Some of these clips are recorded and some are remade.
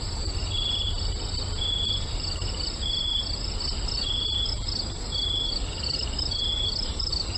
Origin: recorded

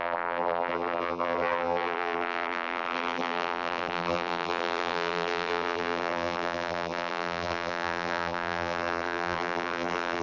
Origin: remade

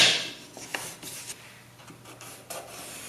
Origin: recorded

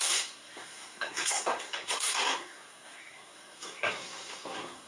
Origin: remade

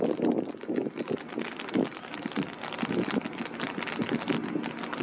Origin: recorded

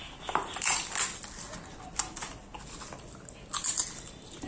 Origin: recorded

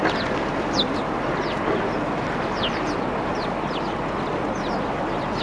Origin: recorded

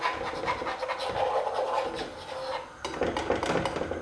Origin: recorded